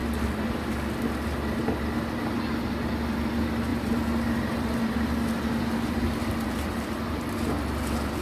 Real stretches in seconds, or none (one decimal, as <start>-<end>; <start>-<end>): 0.0-3.7; 7.3-8.2